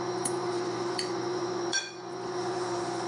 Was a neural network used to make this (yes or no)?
yes